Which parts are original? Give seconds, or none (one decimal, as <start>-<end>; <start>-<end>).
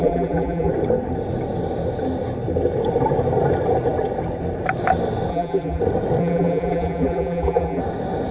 0.7-5.3; 5.8-6.2; 7.8-8.3